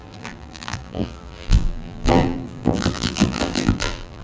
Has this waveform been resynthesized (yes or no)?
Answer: yes